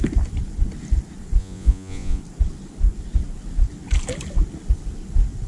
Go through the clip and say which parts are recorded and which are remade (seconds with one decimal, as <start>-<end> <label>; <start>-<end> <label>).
0.0-1.4 recorded; 1.4-2.2 remade; 2.2-5.5 recorded

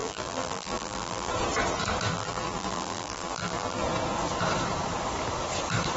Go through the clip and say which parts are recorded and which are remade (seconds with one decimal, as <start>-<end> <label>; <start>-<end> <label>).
0.0-1.3 remade; 1.3-2.1 recorded; 2.1-3.8 remade; 3.8-6.0 recorded